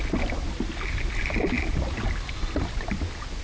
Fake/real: real